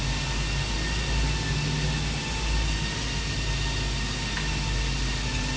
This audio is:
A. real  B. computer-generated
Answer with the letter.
A